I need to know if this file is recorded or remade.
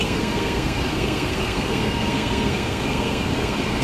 remade